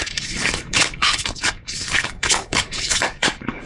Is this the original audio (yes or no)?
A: no